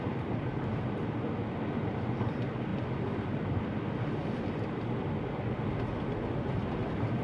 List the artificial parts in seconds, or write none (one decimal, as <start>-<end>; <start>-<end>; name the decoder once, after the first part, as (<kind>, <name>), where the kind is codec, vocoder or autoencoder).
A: 0.0-7.2 (vocoder, BigVGAN v2)